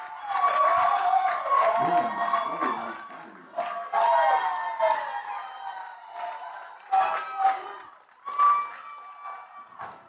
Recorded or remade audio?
recorded